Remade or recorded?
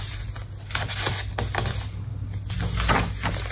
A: recorded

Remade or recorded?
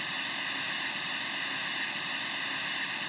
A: recorded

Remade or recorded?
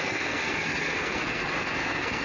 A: remade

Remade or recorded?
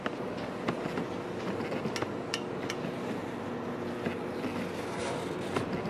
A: recorded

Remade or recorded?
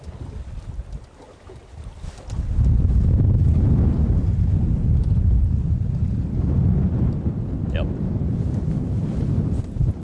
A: recorded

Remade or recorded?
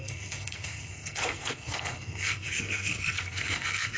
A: remade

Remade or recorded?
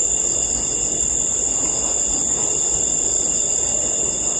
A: recorded